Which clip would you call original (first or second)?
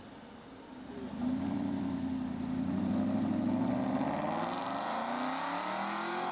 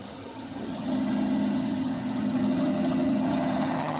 first